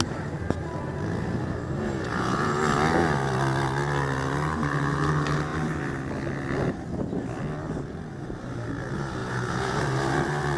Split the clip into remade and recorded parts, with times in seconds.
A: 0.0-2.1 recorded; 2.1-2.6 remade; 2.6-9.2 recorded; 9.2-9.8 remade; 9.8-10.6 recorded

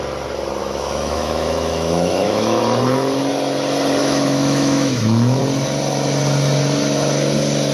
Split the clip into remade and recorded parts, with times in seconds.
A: 0.0-0.6 recorded; 0.6-2.6 remade; 2.6-4.0 recorded; 4.0-5.4 remade; 5.4-7.7 recorded

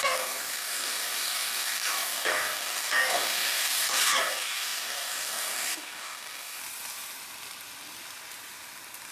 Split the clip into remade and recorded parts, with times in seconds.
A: 0.0-6.6 remade; 6.6-9.1 recorded

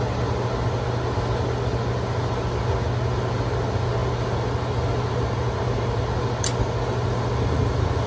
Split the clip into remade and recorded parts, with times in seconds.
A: 0.0-8.1 recorded